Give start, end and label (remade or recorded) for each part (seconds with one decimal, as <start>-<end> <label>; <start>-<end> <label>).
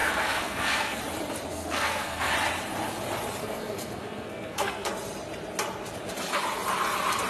0.0-1.0 remade; 1.0-1.5 recorded; 1.5-2.3 remade; 2.3-3.4 recorded; 3.4-4.9 remade; 4.9-7.3 recorded